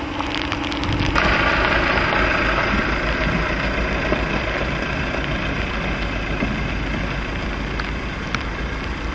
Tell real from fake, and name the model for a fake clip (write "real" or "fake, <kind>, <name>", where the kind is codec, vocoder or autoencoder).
real